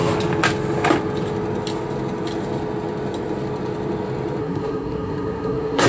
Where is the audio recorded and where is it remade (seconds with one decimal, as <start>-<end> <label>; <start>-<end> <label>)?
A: 0.0-4.4 recorded; 4.4-5.9 remade